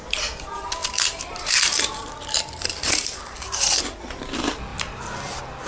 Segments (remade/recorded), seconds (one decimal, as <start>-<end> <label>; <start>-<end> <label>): 0.0-0.8 recorded; 0.8-4.2 remade; 4.2-5.7 recorded